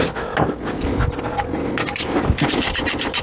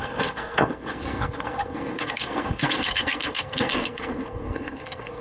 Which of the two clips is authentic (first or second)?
first